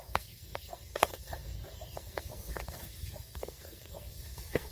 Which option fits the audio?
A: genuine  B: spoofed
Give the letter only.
B